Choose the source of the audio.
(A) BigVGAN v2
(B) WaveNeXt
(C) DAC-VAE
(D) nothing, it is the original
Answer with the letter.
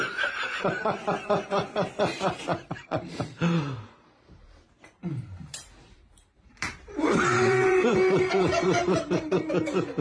A